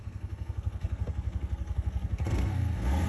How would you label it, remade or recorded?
remade